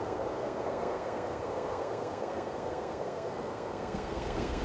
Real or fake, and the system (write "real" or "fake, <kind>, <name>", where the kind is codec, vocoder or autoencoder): fake, codec, SNAC